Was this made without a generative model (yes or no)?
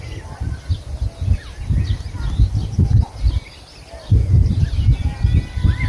yes